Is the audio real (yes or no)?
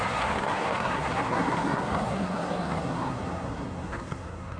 no